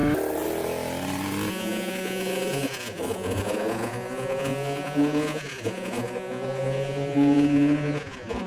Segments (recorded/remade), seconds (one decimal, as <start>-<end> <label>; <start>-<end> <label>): 0.0-1.5 recorded; 1.5-8.5 remade